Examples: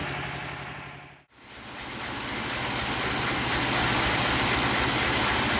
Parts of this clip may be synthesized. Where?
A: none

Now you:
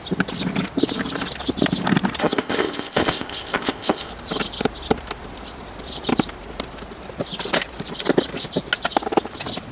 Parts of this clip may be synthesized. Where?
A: 2.2-4.1 (codec, ZipCodec)